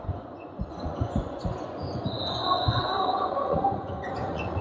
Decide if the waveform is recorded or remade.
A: remade